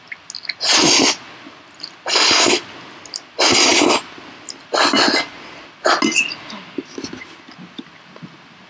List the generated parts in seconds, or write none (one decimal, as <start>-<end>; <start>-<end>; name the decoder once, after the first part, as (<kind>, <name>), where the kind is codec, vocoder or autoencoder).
none